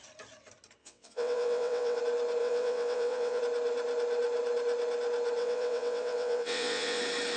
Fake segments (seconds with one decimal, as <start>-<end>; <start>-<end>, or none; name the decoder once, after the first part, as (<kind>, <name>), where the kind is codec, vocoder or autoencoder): 0.8-2.0 (vocoder, WaveNeXt); 2.4-3.4; 5.4-7.0